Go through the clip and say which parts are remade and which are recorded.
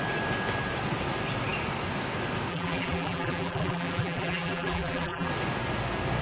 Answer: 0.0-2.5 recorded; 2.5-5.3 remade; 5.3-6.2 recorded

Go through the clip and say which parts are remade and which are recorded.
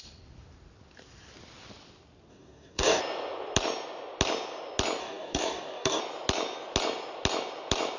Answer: 0.0-2.3 recorded; 2.3-3.0 remade; 3.0-5.0 recorded; 5.0-6.0 remade; 6.0-8.0 recorded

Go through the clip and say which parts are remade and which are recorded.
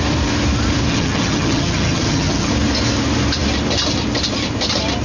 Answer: 0.0-0.9 recorded; 0.9-2.5 remade; 2.5-5.0 recorded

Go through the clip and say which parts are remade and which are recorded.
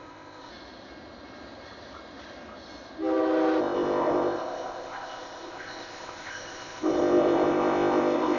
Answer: 0.0-0.5 remade; 0.5-3.6 recorded; 3.6-8.4 remade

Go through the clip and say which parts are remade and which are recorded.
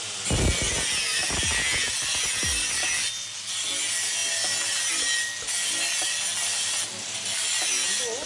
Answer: 0.0-8.3 recorded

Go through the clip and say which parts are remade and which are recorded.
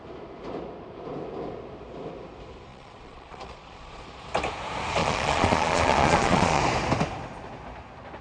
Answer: 0.0-2.7 recorded; 2.7-4.0 remade; 4.0-5.0 recorded; 5.0-6.6 remade; 6.6-8.2 recorded